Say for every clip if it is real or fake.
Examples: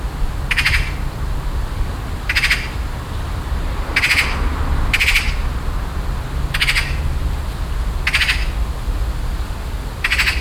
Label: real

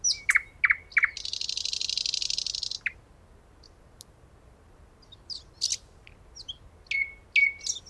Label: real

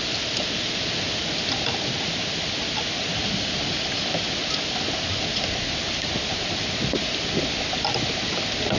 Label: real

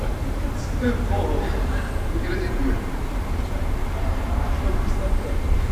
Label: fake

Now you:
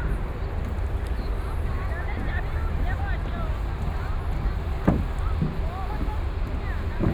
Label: real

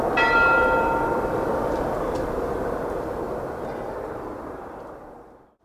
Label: fake